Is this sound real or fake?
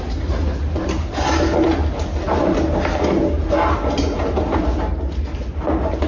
real